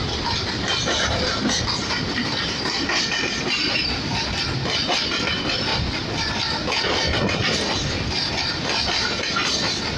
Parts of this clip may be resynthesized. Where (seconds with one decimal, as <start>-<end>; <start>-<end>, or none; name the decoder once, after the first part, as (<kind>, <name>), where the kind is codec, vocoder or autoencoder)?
none